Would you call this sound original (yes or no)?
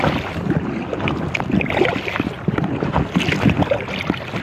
yes